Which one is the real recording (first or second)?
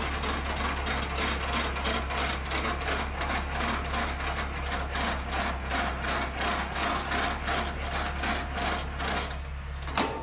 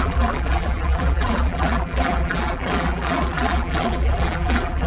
first